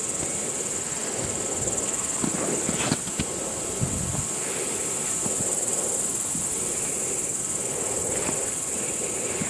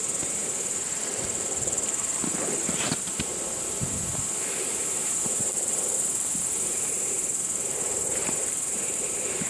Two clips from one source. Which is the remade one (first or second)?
second